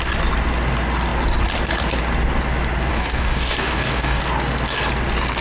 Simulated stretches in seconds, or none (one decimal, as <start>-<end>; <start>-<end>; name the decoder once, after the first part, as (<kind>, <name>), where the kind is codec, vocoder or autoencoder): 2.9-4.2 (codec, DAC)